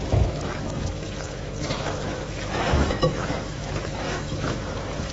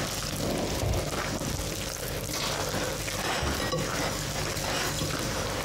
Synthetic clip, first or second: first